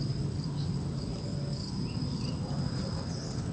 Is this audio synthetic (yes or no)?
no